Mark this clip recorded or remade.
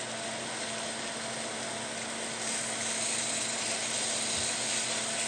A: recorded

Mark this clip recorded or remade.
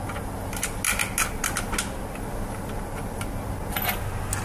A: recorded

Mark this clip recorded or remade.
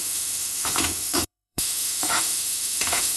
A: remade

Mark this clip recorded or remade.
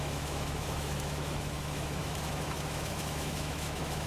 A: remade